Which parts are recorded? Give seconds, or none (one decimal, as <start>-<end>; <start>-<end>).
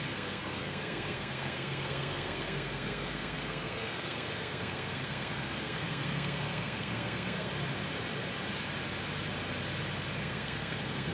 7.5-10.2